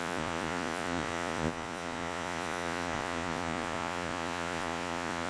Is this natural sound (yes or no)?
no